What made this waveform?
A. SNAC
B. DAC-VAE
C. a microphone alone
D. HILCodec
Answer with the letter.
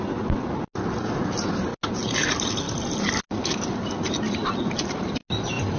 C